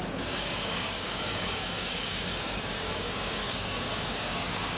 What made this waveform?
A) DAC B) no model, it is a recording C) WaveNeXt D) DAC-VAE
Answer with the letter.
A